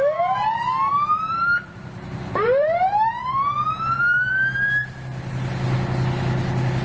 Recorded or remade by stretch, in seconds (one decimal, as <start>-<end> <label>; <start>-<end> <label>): 0.0-0.9 recorded; 0.9-4.3 remade; 4.3-6.8 recorded